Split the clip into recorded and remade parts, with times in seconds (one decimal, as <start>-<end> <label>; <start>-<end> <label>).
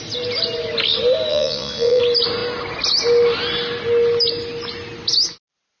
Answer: 0.0-1.3 recorded; 1.3-2.0 remade; 2.0-5.8 recorded